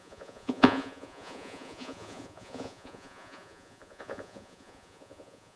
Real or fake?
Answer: fake